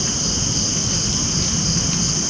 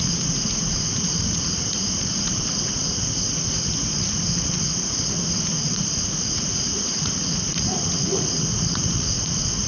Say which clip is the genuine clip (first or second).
first